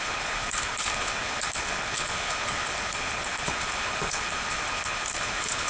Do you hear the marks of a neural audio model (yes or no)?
yes